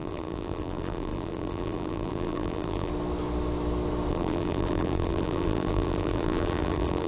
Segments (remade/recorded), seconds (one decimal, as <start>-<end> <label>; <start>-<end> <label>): 0.0-2.9 remade; 2.9-4.1 recorded; 4.1-7.1 remade